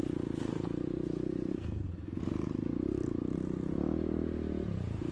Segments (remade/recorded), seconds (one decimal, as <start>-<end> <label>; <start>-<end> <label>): 0.0-1.5 recorded; 1.5-2.2 remade; 2.2-5.1 recorded